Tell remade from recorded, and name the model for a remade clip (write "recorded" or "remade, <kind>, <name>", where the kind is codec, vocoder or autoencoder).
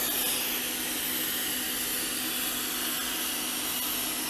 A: recorded